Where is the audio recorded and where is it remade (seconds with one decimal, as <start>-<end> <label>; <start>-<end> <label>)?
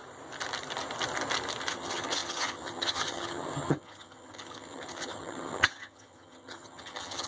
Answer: 0.0-1.7 recorded; 1.7-7.3 remade